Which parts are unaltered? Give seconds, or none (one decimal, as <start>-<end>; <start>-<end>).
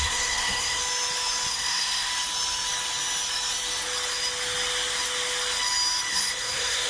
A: 0.8-1.5; 2.1-6.1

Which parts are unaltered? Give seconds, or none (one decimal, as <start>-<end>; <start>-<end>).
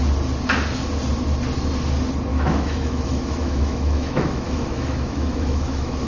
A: 0.0-2.3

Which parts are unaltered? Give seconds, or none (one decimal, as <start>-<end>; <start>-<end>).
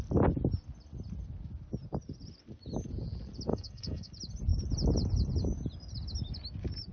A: 0.0-3.5; 4.1-6.9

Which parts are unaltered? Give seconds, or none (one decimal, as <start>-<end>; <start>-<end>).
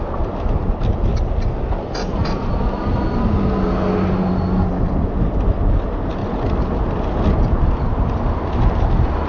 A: 1.1-5.7; 6.2-9.3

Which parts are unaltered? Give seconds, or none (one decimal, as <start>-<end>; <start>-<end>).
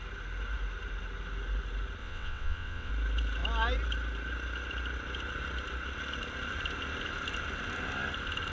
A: 0.0-2.0; 2.9-8.5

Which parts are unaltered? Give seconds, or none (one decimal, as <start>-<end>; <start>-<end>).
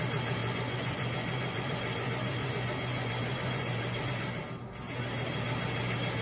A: 0.0-0.4; 4.1-6.2